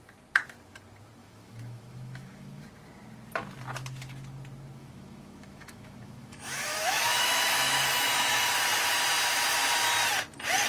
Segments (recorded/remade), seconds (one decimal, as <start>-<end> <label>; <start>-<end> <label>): 0.0-1.2 recorded; 1.2-2.6 remade; 2.6-4.8 recorded; 4.8-8.6 remade; 8.6-10.7 recorded